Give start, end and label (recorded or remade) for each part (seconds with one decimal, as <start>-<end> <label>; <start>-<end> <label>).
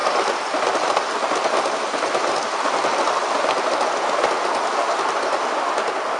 0.0-6.2 recorded